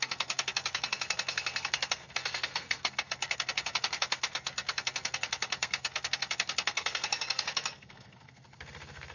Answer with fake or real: fake